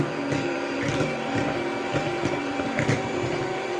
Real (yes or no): no